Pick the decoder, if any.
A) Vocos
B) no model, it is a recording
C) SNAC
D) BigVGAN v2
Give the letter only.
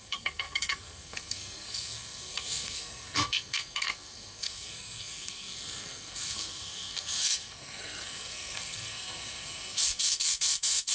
C